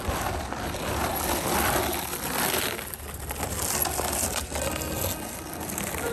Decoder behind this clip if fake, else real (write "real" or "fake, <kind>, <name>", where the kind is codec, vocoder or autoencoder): real